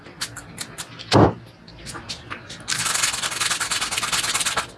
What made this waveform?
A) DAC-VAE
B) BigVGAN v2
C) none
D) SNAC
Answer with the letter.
C